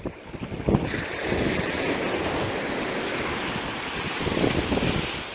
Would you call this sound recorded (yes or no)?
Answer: yes